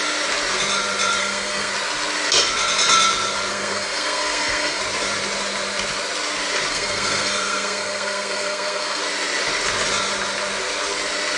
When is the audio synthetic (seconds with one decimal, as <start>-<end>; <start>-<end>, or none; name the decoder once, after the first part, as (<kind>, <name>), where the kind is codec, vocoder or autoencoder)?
1.2-1.7 (codec, SNAC); 3.5-4.8; 6.7-9.0

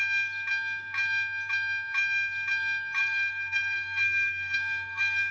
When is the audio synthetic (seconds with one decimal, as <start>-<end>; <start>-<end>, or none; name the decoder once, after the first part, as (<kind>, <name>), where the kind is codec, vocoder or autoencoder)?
3.0-5.3 (codec, SNAC)

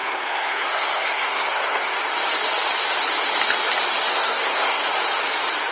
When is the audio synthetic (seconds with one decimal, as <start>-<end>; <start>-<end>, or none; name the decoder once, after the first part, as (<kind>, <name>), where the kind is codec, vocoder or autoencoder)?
0.0-1.9 (codec, SNAC); 4.1-4.8